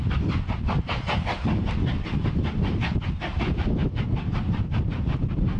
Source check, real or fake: real